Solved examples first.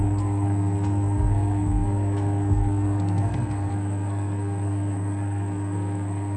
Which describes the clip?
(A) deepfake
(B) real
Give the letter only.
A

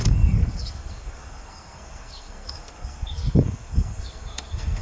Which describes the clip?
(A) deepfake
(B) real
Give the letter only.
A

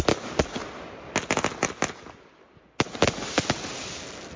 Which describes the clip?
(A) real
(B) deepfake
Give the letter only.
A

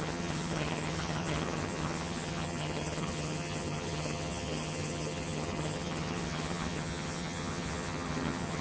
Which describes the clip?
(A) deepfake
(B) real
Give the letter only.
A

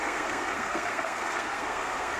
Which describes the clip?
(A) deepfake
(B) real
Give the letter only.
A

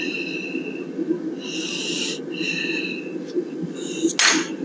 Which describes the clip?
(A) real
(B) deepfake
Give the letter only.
A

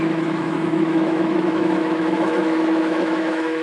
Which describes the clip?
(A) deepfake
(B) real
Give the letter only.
A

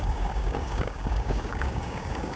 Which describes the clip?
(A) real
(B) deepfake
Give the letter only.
B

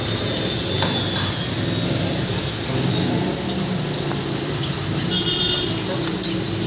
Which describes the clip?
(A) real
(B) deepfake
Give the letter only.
A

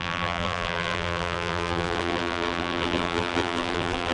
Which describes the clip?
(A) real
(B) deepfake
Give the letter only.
B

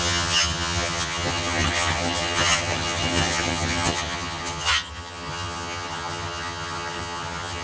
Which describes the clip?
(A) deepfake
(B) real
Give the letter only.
A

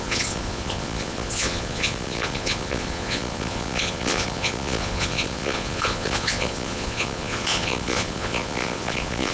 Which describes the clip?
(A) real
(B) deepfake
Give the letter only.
B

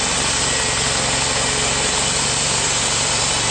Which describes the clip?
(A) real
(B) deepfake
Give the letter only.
A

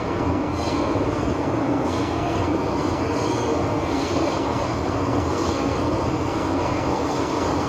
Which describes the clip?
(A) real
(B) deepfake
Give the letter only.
B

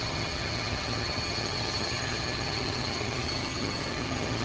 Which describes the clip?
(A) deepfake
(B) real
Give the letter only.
A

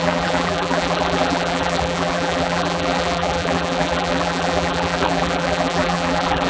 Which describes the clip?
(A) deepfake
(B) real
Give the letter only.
A